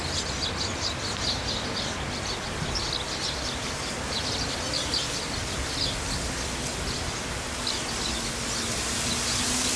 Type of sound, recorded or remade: recorded